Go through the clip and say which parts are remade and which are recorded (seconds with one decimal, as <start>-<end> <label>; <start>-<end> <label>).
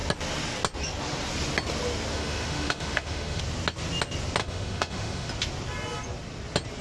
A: 0.0-2.1 recorded; 2.1-3.4 remade; 3.4-4.4 recorded; 4.4-5.3 remade; 5.3-6.8 recorded